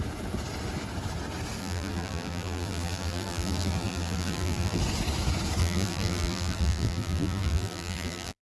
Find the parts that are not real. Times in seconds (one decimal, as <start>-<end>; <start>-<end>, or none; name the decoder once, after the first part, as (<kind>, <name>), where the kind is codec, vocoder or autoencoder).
1.6-4.8 (vocoder, BigVGAN v2); 5.6-8.4